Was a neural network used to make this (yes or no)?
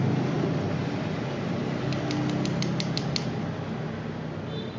no